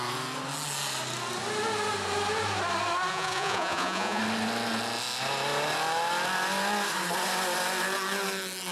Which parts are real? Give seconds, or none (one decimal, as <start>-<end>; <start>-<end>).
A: 0.0-3.1; 4.2-8.7